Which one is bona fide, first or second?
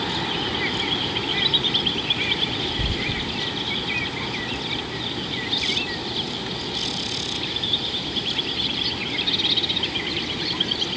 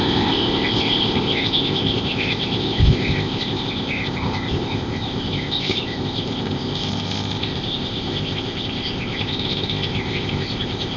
first